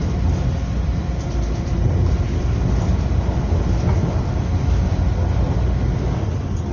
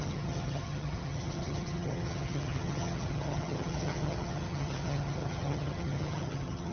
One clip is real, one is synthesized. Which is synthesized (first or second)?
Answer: second